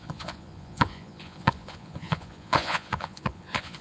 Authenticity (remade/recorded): remade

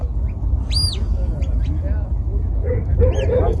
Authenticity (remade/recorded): recorded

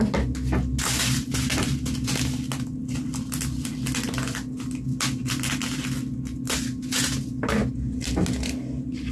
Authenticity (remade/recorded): recorded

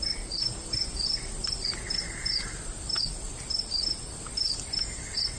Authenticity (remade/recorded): recorded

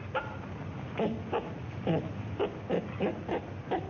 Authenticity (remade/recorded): recorded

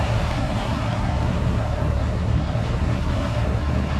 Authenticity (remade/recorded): remade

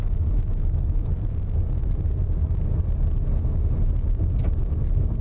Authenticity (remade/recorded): recorded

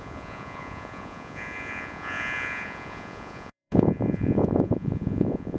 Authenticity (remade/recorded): remade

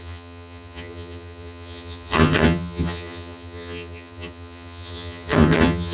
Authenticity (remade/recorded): remade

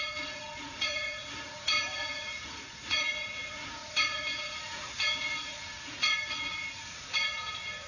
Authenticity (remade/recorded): remade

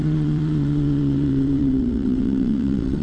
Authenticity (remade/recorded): remade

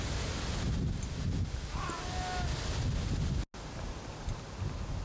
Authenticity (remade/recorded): recorded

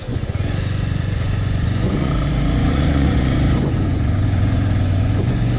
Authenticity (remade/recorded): remade